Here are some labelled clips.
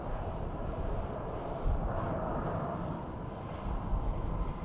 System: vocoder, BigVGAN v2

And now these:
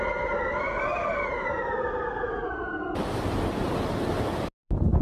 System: none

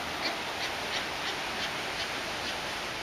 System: none